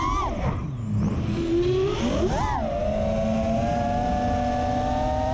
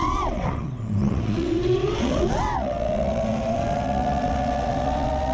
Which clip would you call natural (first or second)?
first